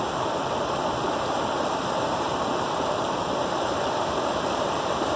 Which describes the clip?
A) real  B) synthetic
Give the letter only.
B